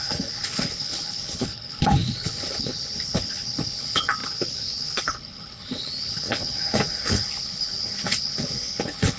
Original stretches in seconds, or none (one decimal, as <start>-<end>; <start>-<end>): none